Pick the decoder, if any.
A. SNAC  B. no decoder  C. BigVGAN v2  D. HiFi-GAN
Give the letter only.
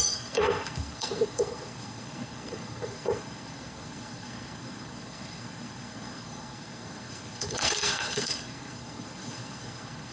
A